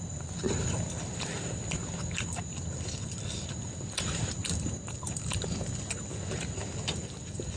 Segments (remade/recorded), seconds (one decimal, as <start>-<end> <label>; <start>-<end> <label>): 0.0-4.4 remade; 4.4-6.8 recorded; 6.8-7.6 remade